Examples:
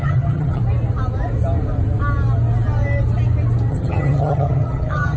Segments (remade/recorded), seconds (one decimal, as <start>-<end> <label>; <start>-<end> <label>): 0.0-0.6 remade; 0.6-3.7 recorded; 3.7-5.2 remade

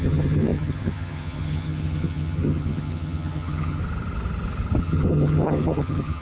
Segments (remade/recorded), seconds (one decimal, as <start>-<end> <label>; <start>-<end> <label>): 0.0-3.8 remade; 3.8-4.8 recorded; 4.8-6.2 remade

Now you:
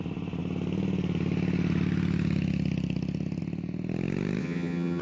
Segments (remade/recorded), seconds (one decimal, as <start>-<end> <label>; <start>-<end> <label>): 0.0-4.4 recorded; 4.4-5.0 remade

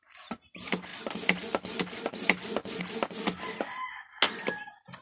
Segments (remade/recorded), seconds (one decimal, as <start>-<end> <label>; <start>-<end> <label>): 0.0-5.0 recorded

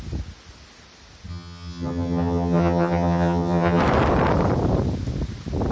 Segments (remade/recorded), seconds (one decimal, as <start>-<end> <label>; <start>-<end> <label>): 0.0-1.3 recorded; 1.3-3.8 remade; 3.8-5.7 recorded